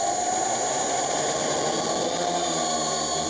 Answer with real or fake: real